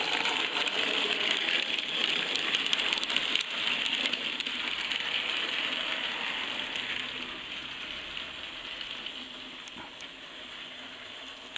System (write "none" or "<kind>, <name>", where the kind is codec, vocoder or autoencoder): none